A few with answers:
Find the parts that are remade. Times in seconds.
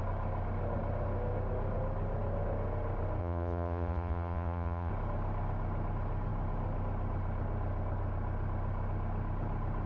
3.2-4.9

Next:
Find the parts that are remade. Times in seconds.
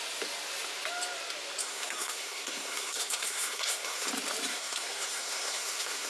1.6-4.1; 4.5-6.1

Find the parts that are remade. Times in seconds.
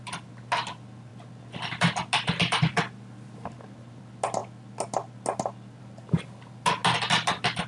none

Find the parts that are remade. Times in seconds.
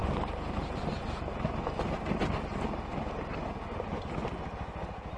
none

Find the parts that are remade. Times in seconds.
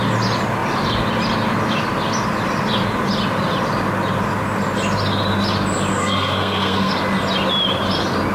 5.9-6.9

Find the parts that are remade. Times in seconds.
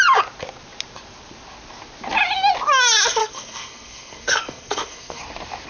3.2-5.2